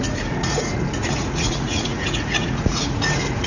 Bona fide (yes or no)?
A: no